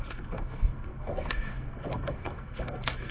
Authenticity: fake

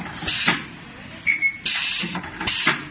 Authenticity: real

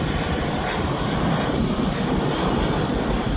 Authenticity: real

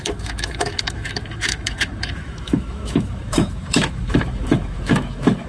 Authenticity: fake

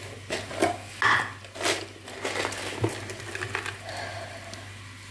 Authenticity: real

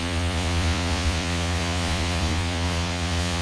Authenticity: fake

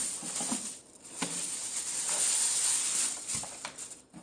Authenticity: fake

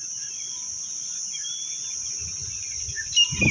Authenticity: real